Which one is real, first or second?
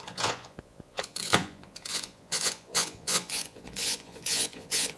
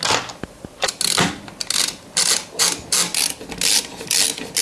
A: second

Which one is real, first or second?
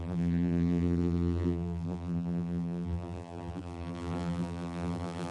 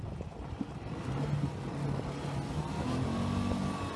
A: second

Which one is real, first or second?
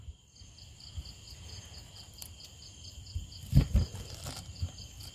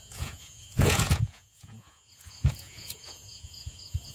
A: first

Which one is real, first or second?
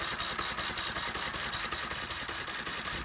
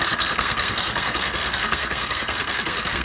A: first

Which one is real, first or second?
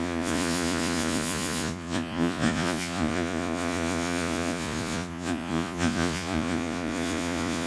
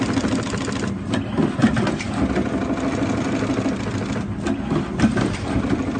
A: second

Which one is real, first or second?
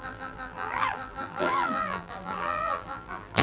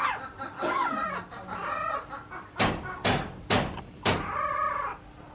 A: second